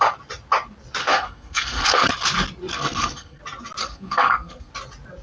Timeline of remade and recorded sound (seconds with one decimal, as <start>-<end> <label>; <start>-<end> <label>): 0.0-1.0 recorded; 1.0-2.1 remade; 2.1-2.7 recorded; 2.7-3.4 remade; 3.4-3.8 recorded; 3.8-4.7 remade; 4.7-5.2 recorded